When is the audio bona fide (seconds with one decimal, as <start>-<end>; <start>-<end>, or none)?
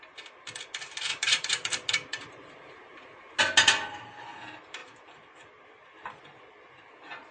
0.0-1.1; 3.4-7.3